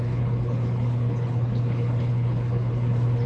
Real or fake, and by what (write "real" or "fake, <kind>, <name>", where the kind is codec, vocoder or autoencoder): fake, codec, HILCodec